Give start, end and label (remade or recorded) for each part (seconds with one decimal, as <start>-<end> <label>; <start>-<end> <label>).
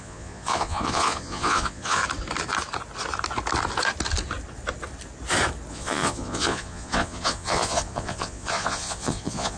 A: 0.0-2.0 remade; 2.0-5.7 recorded; 5.7-9.6 remade